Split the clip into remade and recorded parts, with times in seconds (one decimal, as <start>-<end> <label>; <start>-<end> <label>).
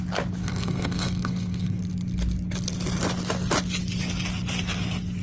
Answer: 0.0-0.4 recorded; 0.4-1.8 remade; 1.8-5.2 recorded